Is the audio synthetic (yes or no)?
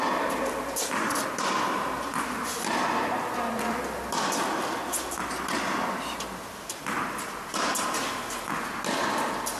no